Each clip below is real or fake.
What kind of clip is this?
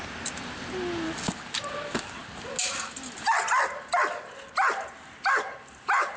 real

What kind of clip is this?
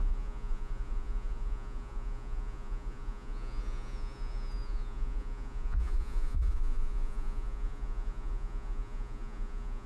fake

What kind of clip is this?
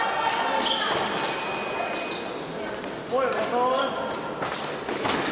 real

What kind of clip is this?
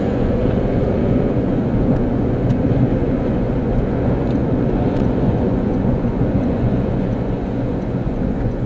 fake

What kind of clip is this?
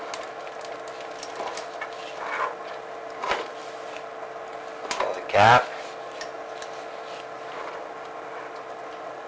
real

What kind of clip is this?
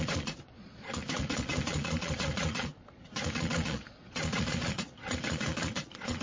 fake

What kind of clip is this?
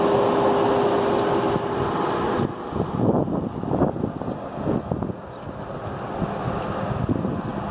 real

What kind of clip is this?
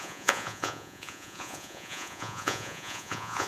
fake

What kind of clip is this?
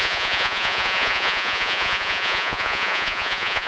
fake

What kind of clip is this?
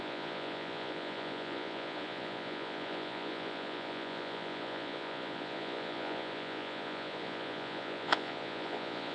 fake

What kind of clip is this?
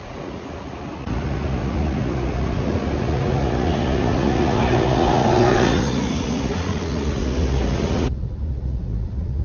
fake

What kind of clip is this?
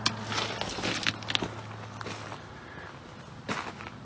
real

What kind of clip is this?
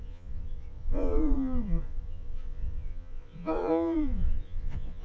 fake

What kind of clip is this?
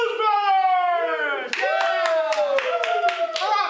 real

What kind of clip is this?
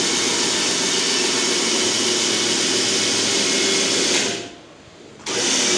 real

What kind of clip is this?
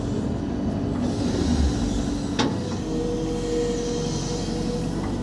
real